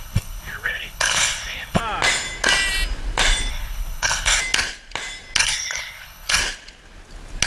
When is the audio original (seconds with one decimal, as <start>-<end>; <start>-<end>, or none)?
1.8-3.5; 4.4-5.4; 6.4-7.5